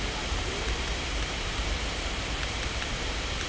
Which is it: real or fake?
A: fake